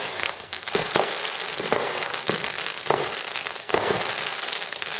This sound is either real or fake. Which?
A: fake